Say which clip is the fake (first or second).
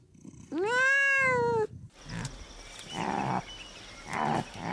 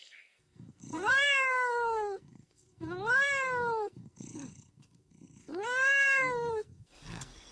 second